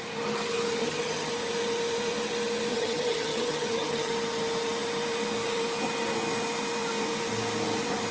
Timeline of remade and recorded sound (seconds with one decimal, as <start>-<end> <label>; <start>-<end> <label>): 0.0-0.8 recorded; 0.8-1.3 remade; 1.3-2.7 recorded; 2.7-4.1 remade; 4.1-8.1 recorded